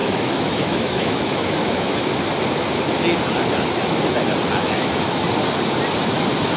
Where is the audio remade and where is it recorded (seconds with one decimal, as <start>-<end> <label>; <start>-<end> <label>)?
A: 0.0-2.1 remade; 2.1-4.6 recorded; 4.6-5.2 remade; 5.2-6.6 recorded